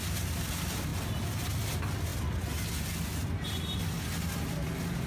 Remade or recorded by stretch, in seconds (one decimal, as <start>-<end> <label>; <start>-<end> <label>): 0.0-5.1 recorded